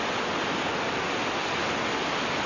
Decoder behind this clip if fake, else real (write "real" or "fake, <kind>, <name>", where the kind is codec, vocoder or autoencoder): real